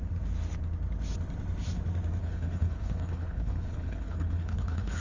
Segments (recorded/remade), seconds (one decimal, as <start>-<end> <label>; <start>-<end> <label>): 0.0-2.2 recorded; 2.2-5.0 remade